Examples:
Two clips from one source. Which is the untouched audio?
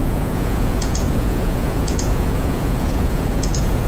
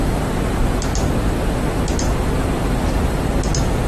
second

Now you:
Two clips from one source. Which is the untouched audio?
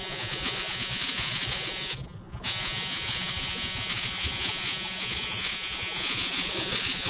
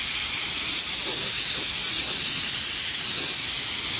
second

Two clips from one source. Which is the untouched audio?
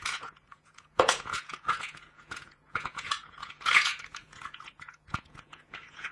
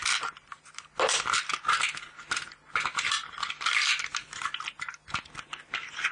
second